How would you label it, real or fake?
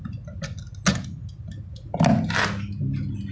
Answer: real